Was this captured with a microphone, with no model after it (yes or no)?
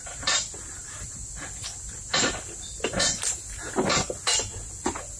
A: yes